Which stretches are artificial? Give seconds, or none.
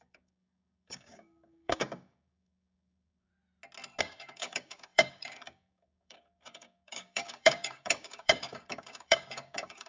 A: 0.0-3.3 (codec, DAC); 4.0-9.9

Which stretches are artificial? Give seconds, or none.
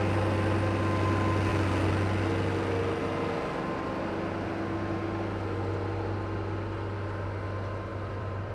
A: 7.9-8.5 (vocoder, BigVGAN v2)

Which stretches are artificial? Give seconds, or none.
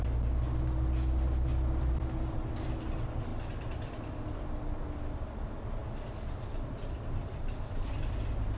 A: none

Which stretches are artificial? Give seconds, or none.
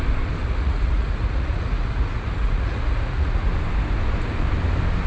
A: 0.4-3.5 (vocoder, Vocos)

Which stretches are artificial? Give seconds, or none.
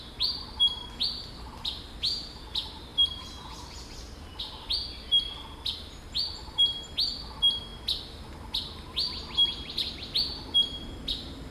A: none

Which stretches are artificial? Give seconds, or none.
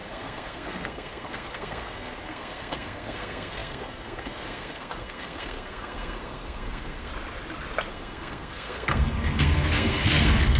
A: 0.0-7.1 (codec, SNAC); 7.9-10.6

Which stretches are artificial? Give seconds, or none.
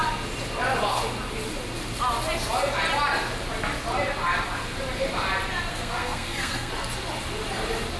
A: 5.7-6.7 (codec, SNAC)